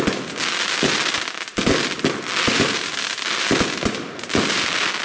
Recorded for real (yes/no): yes